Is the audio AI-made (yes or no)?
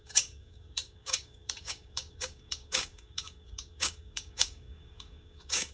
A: yes